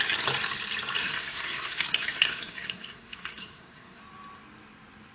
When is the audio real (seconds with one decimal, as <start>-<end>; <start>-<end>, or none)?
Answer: 0.0-1.0; 4.0-5.1